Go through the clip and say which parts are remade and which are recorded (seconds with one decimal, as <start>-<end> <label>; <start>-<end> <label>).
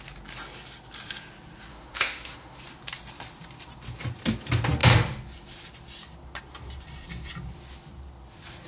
0.0-1.7 recorded; 1.7-2.6 remade; 2.6-8.7 recorded